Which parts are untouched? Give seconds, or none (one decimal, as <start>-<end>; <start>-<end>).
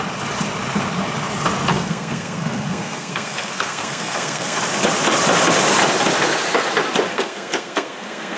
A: 0.0-1.7; 4.6-7.1